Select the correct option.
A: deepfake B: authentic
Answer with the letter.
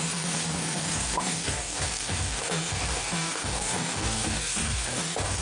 A